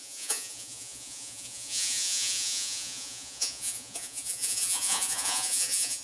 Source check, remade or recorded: remade